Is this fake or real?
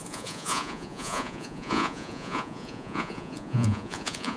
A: fake